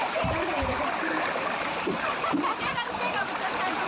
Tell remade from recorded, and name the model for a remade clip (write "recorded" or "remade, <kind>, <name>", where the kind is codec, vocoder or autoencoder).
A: remade, vocoder, BigVGAN v2